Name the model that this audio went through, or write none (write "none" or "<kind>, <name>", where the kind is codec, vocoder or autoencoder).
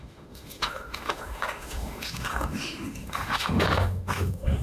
autoencoder, DAC-VAE